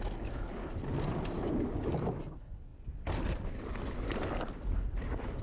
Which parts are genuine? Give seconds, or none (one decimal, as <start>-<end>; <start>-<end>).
0.0-5.4